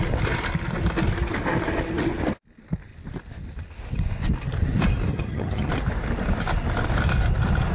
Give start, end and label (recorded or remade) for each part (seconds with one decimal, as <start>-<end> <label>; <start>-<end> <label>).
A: 0.0-5.1 recorded; 5.1-5.7 remade; 5.7-7.7 recorded